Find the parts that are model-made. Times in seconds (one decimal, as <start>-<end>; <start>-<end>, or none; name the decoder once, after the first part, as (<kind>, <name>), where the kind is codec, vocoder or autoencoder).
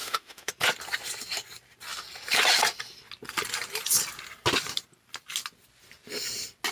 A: 0.0-0.5 (autoencoder, DAC-VAE)